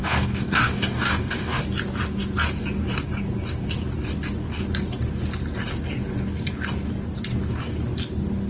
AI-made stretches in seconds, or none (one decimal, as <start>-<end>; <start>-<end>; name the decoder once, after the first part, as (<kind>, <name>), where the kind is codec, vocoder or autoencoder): 0.0-1.6 (codec, DAC)